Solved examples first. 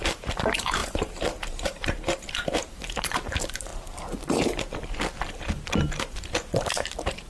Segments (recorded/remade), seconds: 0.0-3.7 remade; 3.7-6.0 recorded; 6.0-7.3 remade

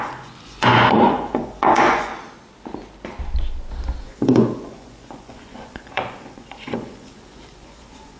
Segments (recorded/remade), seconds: 0.0-2.1 remade; 2.1-4.0 recorded; 4.0-8.2 remade

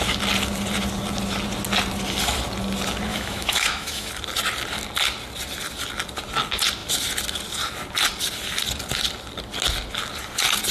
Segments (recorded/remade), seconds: 0.0-3.1 recorded; 3.1-4.1 remade; 4.1-10.7 recorded